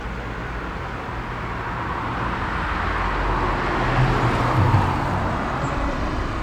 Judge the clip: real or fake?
real